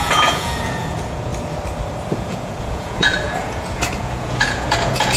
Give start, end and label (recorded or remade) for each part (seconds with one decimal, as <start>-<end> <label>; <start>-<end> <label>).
0.0-1.3 remade; 1.3-2.1 recorded; 2.1-5.2 remade